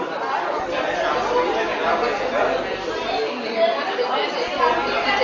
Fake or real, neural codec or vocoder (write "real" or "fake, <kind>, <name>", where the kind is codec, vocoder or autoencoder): real